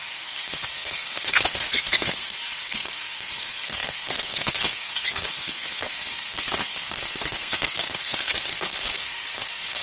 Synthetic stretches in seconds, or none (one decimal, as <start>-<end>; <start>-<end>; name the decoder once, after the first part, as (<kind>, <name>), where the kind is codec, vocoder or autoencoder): 0.0-9.8 (codec, SNAC)